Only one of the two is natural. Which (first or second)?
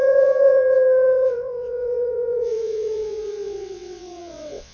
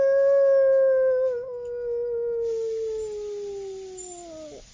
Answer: second